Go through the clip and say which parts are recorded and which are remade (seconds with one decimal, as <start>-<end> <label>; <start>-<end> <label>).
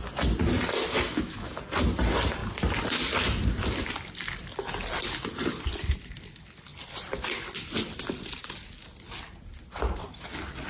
0.0-0.9 recorded; 0.9-1.6 remade; 1.6-10.7 recorded